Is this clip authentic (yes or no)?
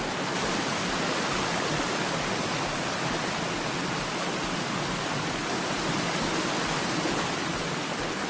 yes